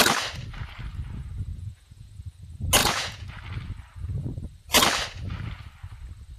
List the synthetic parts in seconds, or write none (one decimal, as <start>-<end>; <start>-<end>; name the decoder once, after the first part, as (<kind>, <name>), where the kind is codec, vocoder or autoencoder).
1.5-2.1 (vocoder, Vocos); 2.8-3.3